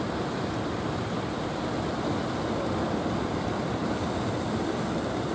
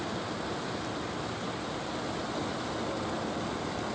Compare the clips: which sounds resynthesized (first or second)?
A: first